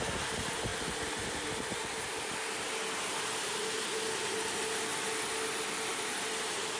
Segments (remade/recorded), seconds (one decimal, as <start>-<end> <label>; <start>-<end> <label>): 0.0-6.8 recorded